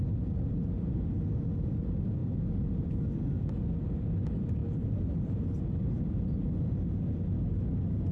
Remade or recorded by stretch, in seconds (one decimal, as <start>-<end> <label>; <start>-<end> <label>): 0.0-8.1 recorded